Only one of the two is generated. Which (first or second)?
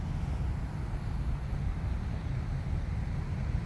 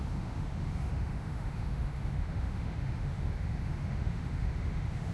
second